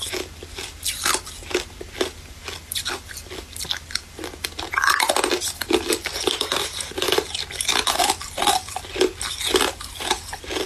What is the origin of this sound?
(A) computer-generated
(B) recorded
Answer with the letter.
B